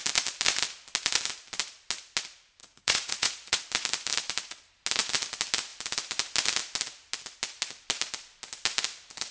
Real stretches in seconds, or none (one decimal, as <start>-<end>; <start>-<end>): 0.0-2.6; 3.6-9.3